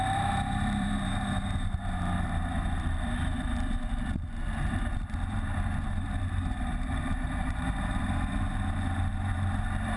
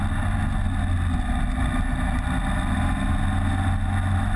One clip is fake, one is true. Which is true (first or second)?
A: second